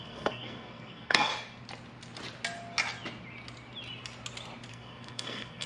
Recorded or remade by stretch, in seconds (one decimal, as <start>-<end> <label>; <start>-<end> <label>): 0.0-1.3 remade; 1.3-4.7 recorded; 4.7-5.7 remade